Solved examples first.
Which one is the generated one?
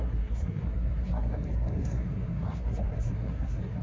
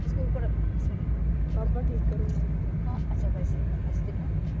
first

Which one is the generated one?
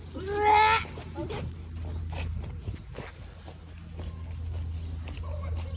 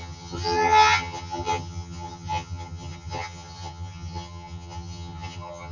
second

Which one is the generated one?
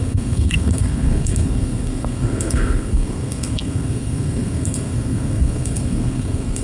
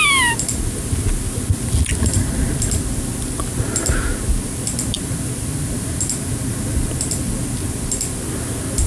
first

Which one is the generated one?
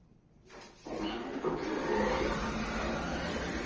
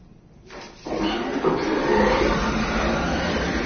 second